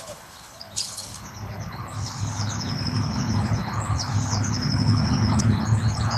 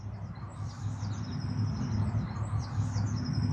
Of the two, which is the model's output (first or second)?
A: first